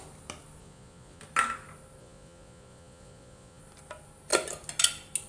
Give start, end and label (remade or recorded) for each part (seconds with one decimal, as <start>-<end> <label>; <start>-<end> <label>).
0.0-0.6 recorded; 0.6-1.2 remade; 1.2-2.0 recorded; 2.0-3.6 remade; 3.6-5.3 recorded